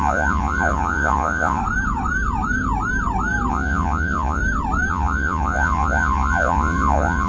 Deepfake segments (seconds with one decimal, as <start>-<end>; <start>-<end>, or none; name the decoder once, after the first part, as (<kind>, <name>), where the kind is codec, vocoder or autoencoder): 0.0-1.6 (vocoder, Vocos); 3.5-4.4; 4.9-7.3